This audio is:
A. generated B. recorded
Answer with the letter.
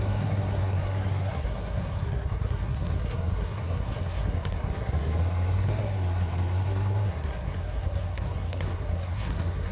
A